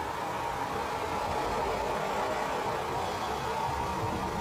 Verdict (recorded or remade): recorded